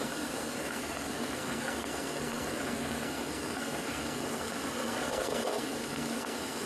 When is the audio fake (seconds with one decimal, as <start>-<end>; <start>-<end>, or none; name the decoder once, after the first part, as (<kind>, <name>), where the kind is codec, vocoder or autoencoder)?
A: 0.0-6.7 (codec, SNAC)